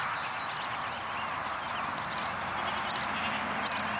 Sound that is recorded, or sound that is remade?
recorded